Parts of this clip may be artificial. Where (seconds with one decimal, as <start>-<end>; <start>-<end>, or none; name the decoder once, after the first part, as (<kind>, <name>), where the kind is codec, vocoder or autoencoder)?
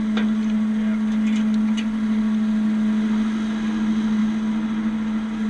none